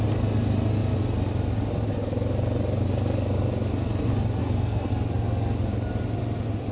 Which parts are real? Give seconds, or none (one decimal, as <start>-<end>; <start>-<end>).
0.0-4.4; 4.9-6.7